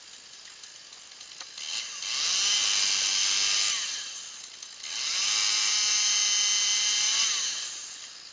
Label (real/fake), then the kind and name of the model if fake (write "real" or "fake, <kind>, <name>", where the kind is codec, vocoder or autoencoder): real